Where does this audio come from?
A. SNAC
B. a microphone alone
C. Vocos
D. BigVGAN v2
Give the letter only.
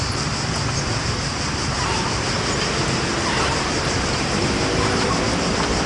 B